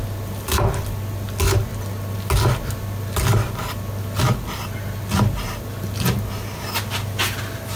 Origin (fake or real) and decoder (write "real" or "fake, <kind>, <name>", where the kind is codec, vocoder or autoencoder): real